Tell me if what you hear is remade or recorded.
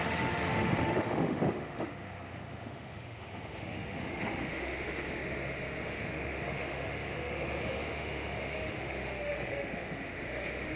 remade